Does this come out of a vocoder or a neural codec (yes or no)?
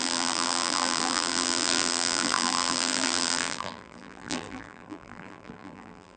yes